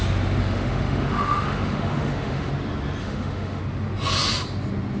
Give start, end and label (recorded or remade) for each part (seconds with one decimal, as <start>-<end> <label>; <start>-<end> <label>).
0.0-0.4 recorded; 0.4-2.5 remade; 2.5-3.0 recorded; 3.0-3.6 remade; 3.6-5.0 recorded

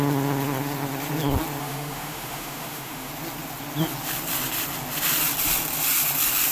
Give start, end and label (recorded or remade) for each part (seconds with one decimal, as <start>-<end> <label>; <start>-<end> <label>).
0.0-1.6 recorded; 1.6-3.1 remade; 3.1-6.5 recorded

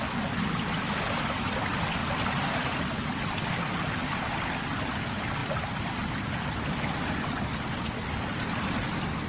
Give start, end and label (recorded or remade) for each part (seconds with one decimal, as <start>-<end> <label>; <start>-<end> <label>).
0.0-9.3 recorded